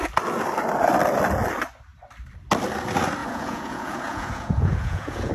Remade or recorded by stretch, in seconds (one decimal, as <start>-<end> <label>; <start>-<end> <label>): 0.0-3.2 recorded; 3.2-5.3 remade